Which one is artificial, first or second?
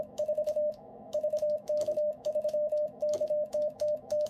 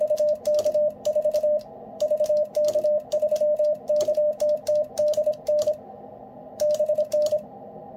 first